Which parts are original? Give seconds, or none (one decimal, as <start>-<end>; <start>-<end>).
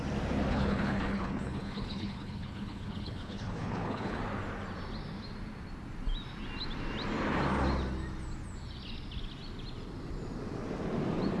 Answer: 0.0-0.5; 4.2-11.4